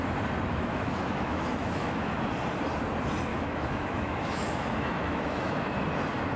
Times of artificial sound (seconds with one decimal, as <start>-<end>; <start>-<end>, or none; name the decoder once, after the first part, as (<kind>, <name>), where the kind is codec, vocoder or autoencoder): 0.5-2.2 (autoencoder, DAC-VAE); 3.3-5.6